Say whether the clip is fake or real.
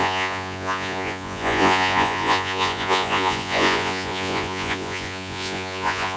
fake